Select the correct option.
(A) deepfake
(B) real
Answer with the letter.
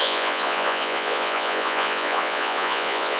A